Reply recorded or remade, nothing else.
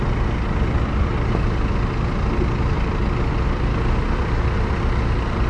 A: recorded